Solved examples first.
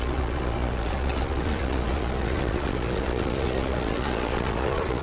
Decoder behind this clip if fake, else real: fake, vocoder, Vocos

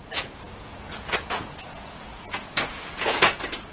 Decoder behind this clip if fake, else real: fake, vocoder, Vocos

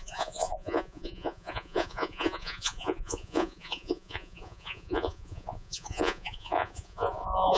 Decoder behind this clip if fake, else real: fake, vocoder, Vocos